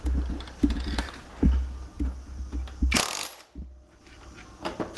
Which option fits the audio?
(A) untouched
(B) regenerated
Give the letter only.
A